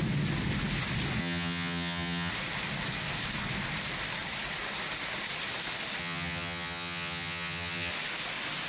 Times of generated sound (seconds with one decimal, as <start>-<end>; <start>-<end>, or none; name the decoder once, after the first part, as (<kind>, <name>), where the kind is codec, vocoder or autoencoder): 1.2-2.3 (vocoder, HiFi-GAN); 6.0-7.9